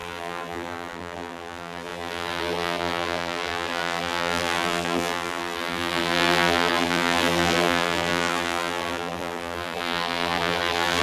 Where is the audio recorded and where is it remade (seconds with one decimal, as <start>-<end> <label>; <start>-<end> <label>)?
0.0-11.0 remade